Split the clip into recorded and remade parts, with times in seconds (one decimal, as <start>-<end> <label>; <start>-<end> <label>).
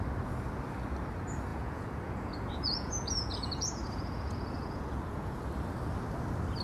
0.0-1.5 recorded; 1.5-5.5 remade; 5.5-6.6 recorded